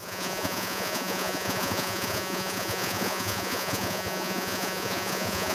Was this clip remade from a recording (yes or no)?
yes